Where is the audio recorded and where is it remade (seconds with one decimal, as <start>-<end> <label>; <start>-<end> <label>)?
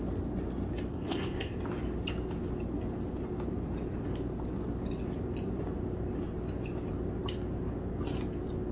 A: 0.0-0.9 recorded; 0.9-1.6 remade; 1.6-8.7 recorded